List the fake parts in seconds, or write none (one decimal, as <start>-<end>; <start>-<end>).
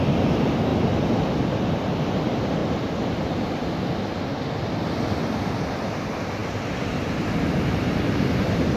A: 6.4-8.4